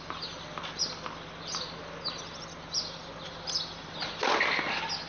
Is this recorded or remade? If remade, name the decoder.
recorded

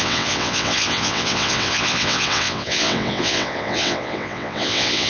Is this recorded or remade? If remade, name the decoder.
remade, vocoder, WaveNeXt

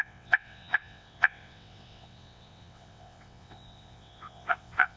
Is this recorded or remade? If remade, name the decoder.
remade, vocoder, WaveNeXt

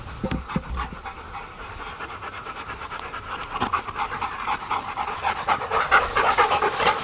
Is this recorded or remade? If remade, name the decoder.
recorded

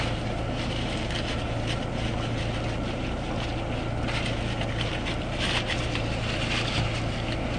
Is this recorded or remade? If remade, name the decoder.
recorded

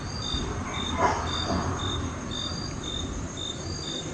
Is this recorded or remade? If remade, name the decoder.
recorded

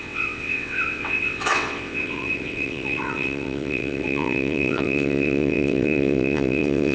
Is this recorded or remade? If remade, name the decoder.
remade, vocoder, WaveNeXt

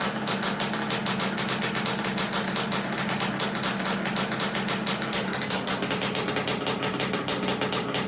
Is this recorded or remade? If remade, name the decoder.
recorded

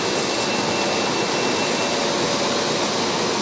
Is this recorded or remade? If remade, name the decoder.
recorded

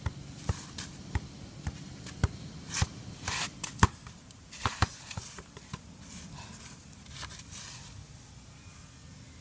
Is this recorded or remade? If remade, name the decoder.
recorded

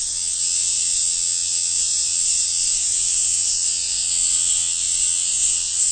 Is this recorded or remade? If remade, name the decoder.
remade, vocoder, WaveNeXt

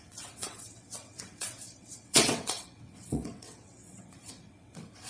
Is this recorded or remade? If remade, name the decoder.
remade, vocoder, WaveNeXt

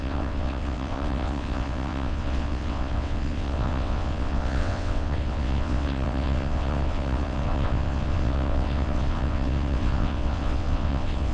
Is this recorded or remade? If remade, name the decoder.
remade, vocoder, WaveNeXt